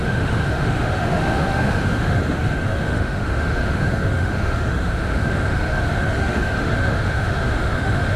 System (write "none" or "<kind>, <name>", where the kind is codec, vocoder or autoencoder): autoencoder, DAC-VAE